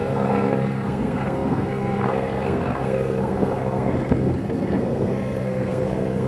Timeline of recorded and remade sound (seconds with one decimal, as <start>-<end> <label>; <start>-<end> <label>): 0.0-6.3 remade